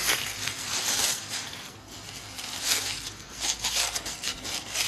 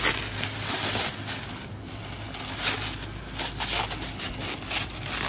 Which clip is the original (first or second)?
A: second